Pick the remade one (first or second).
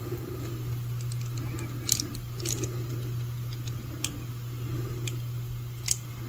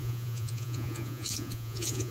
second